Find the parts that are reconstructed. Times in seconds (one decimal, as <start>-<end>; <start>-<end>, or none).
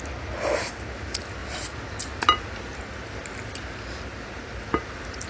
none